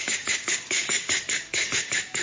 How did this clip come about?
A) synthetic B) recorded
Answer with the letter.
A